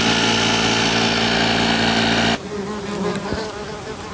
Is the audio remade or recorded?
recorded